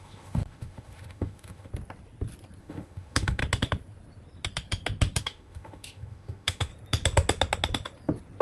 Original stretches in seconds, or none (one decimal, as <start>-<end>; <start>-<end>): 1.7-2.6; 3.4-5.2; 6.7-8.4